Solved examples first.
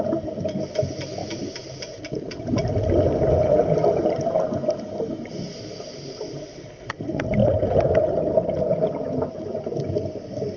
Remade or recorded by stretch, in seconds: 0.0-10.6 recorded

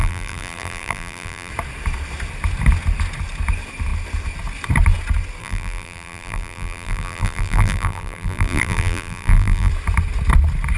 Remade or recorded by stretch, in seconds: 0.0-1.5 remade; 1.5-5.4 recorded; 5.4-9.7 remade; 9.7-10.8 recorded